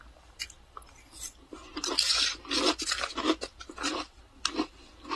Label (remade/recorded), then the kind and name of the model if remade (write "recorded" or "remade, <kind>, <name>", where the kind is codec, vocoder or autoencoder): recorded